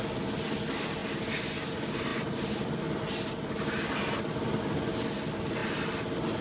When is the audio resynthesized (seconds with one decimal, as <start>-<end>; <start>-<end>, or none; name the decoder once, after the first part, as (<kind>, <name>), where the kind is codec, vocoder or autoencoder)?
none

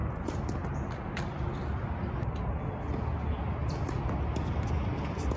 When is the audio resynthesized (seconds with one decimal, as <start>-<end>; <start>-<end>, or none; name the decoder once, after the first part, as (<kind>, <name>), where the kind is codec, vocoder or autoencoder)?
none

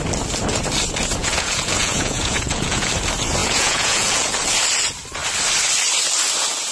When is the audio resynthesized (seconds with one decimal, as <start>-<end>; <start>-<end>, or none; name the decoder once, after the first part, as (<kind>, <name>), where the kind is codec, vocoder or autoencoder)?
1.2-2.9 (vocoder, Vocos); 3.4-4.3

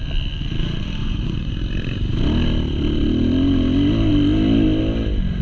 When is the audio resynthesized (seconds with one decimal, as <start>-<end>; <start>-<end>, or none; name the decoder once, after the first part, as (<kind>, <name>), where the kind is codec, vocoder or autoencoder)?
1.0-1.5 (vocoder, Vocos)